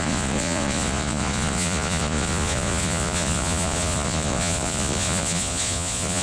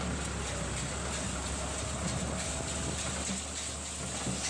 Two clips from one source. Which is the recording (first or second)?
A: second